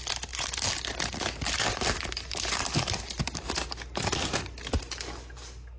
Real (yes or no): yes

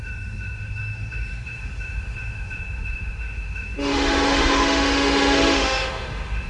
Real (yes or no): no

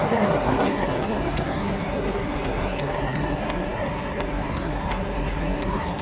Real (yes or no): no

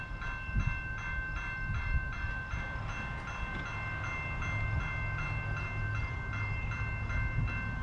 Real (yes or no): yes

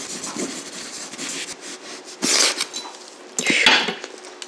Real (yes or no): yes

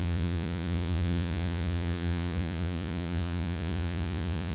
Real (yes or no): no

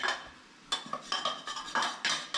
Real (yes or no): yes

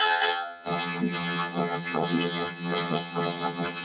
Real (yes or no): no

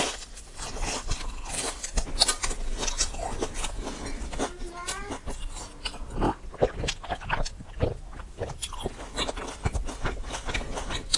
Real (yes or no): yes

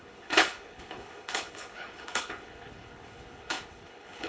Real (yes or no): no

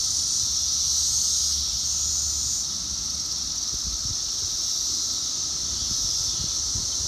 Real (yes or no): yes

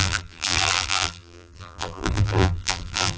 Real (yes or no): no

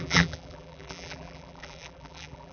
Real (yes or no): no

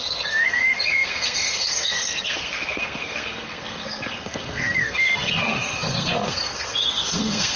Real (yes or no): no